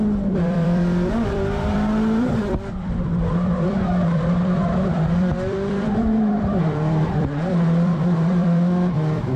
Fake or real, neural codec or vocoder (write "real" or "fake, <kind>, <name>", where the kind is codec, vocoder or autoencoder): fake, vocoder, BigVGAN v2